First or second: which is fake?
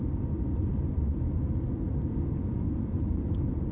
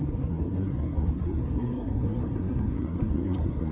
second